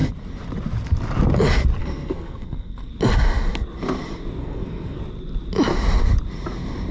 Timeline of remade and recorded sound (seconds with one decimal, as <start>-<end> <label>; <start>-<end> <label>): 0.0-1.8 recorded; 1.8-2.9 remade; 2.9-4.4 recorded; 4.4-5.0 remade; 5.0-6.9 recorded

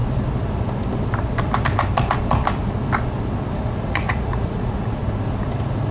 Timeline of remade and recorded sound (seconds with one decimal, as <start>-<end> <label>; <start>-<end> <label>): 0.0-3.5 recorded; 3.5-5.0 remade; 5.0-5.9 recorded

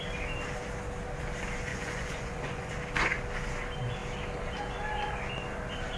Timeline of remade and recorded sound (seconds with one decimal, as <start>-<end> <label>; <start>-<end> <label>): 0.0-1.7 recorded; 1.7-2.7 remade; 2.7-6.0 recorded

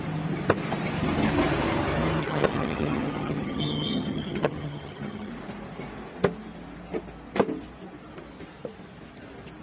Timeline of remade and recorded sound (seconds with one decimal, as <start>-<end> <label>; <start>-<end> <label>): 0.0-2.2 recorded; 2.2-5.3 remade; 5.3-9.6 recorded

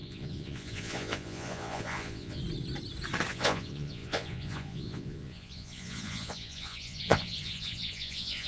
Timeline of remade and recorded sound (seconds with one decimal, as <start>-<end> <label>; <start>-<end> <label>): 0.0-2.4 remade; 2.4-3.3 recorded; 3.3-8.5 remade

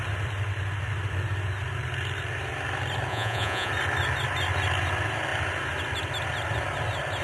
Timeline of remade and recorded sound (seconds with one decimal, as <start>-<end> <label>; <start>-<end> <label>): 0.0-3.1 recorded; 3.1-3.7 remade; 3.7-7.2 recorded